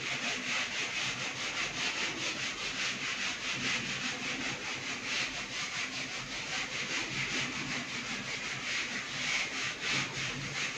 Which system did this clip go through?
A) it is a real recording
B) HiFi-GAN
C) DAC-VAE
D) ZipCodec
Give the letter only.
A